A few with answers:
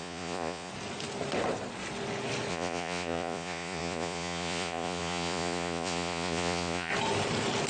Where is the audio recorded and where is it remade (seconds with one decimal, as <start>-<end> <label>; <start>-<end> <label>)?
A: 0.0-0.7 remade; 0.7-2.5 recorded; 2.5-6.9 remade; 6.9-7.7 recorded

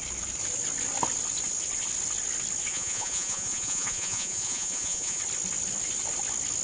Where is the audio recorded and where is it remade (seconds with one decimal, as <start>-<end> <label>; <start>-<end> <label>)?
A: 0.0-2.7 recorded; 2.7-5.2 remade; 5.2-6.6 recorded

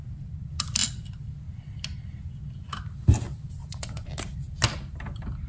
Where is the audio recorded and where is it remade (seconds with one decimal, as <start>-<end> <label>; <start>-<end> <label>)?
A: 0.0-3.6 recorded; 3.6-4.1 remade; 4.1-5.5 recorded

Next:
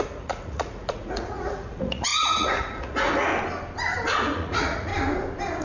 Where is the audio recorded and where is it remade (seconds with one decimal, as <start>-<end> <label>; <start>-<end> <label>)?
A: 0.0-3.3 remade; 3.3-4.2 recorded; 4.2-4.9 remade; 4.9-5.6 recorded

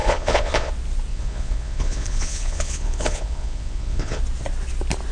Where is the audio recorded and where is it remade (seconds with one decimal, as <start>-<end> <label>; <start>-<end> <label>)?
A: 0.0-0.7 remade; 0.7-1.1 recorded; 1.1-4.2 remade; 4.2-5.1 recorded

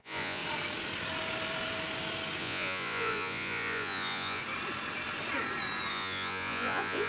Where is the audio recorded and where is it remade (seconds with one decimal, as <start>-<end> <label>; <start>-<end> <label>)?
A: 0.0-0.4 remade; 0.4-2.4 recorded; 2.4-4.4 remade; 4.4-5.9 recorded; 5.9-7.1 remade